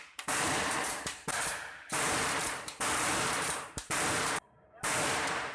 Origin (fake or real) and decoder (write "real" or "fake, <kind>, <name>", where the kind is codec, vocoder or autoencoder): fake, vocoder, BigVGAN v2